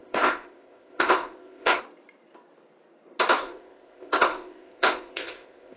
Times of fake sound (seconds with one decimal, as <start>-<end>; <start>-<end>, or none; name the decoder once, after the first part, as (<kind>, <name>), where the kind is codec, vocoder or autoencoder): 0.0-1.8 (codec, ZipCodec); 3.4-5.8